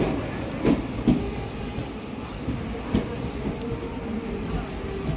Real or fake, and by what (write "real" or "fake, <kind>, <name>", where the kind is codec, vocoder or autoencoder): real